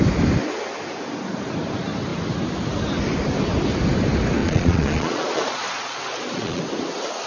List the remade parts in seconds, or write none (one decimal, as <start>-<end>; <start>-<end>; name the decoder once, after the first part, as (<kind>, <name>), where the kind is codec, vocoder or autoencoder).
4.4-6.6 (vocoder, Vocos)

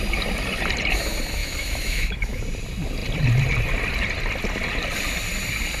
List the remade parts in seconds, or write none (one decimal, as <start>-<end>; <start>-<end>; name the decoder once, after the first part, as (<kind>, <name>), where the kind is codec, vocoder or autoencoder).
1.4-2.4 (autoencoder, DAC-VAE)

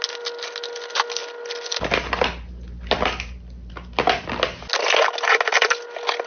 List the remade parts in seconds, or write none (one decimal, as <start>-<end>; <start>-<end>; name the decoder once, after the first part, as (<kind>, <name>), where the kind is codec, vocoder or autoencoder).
none